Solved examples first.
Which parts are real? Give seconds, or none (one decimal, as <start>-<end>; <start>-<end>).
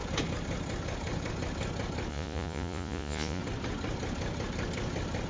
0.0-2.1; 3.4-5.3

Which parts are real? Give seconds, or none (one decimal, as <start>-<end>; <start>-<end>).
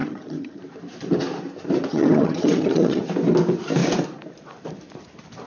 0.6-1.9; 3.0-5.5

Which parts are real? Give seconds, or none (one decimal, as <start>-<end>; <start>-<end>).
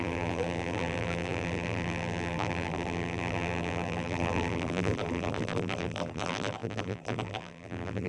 none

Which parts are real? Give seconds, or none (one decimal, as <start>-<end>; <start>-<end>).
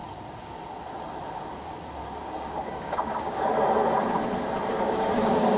0.0-2.2; 3.5-4.7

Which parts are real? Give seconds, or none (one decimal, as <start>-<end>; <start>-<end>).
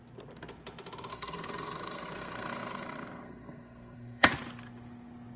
0.0-1.1; 4.3-5.4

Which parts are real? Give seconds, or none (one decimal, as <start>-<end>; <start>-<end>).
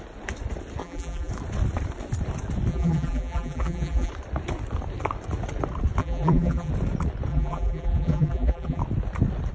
0.0-0.8; 1.3-2.7; 4.1-6.0; 6.7-7.3; 8.8-9.5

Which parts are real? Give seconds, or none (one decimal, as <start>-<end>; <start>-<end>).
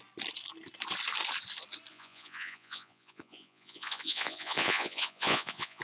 0.0-1.9